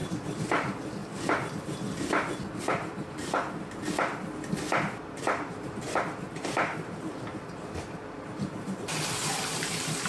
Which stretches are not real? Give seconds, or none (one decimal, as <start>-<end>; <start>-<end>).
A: 0.5-1.0; 5.2-10.1